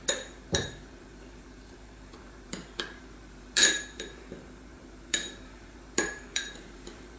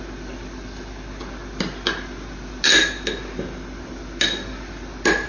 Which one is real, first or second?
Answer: second